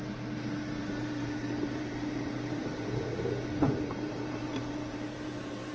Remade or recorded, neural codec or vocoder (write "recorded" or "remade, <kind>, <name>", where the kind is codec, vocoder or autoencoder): remade, vocoder, BigVGAN v2